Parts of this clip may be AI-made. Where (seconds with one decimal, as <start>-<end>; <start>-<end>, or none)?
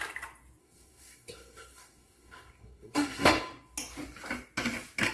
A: 0.6-3.3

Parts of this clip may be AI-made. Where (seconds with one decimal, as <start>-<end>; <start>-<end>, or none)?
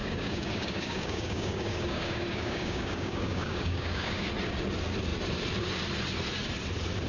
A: 0.0-4.3